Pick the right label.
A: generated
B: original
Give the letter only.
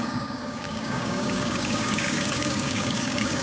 A